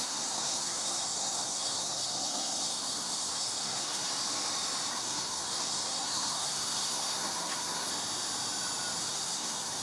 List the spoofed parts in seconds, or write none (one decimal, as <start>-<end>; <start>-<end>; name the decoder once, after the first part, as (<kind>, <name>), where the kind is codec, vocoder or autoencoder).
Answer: 0.0-4.1 (codec, SNAC); 4.9-7.9; 9.0-9.8

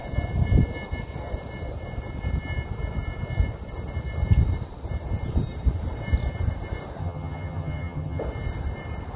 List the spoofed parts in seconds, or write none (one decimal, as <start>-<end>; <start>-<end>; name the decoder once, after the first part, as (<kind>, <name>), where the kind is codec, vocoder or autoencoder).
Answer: 7.0-8.2 (vocoder, HiFi-GAN)

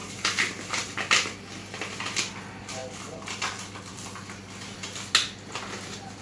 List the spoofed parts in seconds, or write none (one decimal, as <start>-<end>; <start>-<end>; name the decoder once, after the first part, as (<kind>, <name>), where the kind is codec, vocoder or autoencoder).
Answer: none

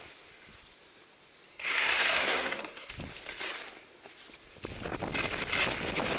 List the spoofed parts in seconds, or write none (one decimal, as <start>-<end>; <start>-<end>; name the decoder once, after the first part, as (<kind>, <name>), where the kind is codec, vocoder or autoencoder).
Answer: 1.5-2.9 (codec, SNAC)

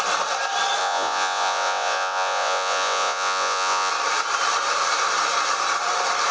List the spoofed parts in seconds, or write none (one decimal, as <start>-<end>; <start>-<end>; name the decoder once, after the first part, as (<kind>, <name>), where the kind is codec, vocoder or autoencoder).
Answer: 0.8-3.9 (vocoder, Vocos)